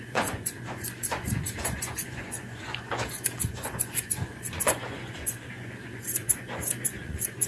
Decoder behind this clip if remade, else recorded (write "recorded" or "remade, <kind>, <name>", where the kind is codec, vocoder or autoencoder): remade, vocoder, Vocos